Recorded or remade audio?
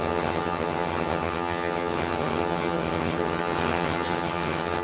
remade